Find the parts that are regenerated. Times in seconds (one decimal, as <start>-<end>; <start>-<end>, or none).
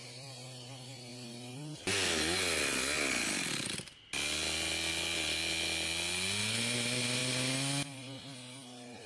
none